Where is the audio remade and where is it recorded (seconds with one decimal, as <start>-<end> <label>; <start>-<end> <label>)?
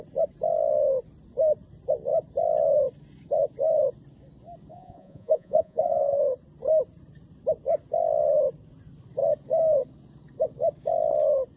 0.0-4.7 recorded; 4.7-6.2 remade; 6.2-11.6 recorded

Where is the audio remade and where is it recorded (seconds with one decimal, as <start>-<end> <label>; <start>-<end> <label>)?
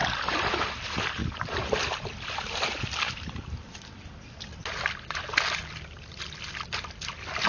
0.0-0.6 remade; 0.6-1.2 recorded; 1.2-5.4 remade; 5.4-7.5 recorded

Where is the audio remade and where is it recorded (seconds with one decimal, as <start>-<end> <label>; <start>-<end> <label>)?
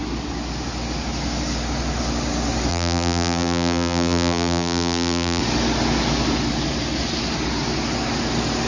0.0-2.7 recorded; 2.7-5.4 remade; 5.4-8.7 recorded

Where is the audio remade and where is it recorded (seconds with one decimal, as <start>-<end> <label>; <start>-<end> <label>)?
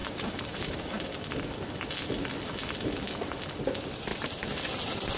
0.0-0.9 remade; 0.9-4.1 recorded; 4.1-5.2 remade